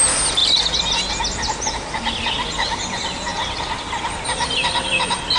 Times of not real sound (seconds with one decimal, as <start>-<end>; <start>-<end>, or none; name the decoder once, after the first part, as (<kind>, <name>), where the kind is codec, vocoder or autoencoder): none